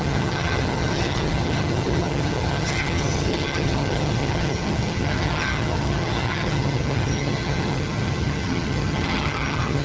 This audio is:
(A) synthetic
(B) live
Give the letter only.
A